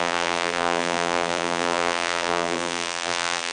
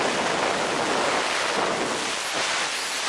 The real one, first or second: second